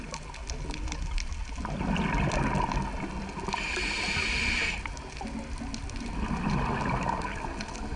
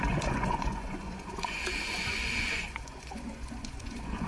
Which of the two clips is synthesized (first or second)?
second